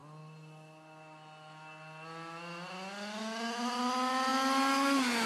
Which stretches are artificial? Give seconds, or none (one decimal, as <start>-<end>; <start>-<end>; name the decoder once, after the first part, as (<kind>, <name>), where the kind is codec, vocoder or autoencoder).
none